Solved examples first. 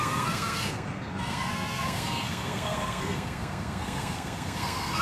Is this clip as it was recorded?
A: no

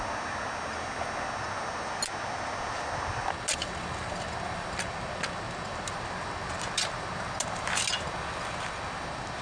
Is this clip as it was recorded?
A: yes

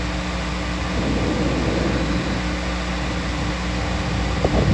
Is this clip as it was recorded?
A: yes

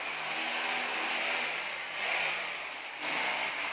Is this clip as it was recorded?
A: yes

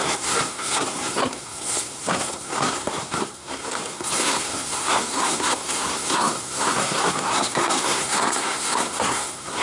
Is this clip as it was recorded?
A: no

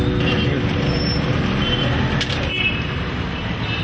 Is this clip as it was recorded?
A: yes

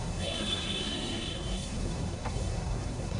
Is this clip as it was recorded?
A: no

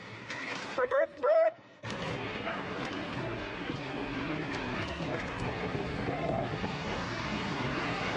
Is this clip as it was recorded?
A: no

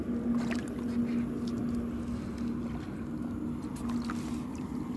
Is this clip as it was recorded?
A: yes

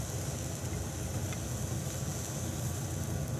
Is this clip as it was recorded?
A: yes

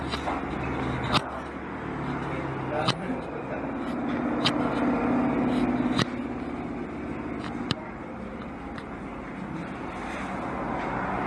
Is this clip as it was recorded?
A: yes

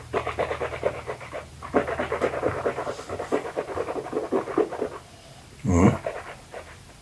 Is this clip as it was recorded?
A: yes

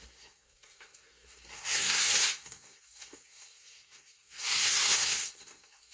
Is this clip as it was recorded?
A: no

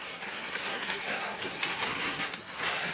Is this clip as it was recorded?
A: no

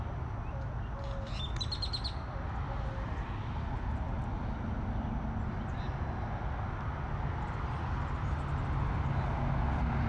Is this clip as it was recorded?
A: yes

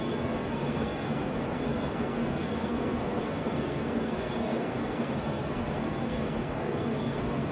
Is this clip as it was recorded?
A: no